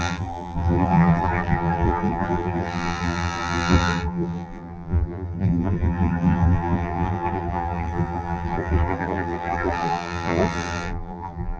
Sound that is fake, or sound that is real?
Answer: fake